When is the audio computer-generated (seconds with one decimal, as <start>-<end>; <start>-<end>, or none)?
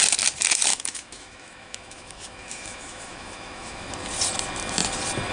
0.7-3.9